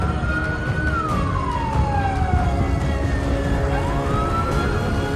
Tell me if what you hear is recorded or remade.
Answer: recorded